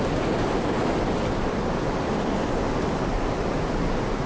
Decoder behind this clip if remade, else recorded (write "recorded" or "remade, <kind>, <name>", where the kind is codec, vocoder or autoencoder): recorded